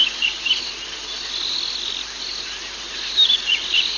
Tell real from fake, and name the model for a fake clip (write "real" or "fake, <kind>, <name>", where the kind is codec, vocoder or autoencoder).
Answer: real